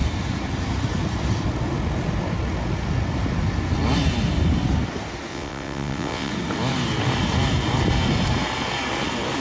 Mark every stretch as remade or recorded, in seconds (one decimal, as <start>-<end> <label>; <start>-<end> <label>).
0.0-5.3 recorded; 5.3-6.3 remade; 6.3-9.4 recorded